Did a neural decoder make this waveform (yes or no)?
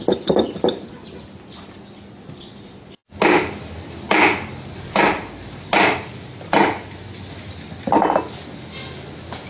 no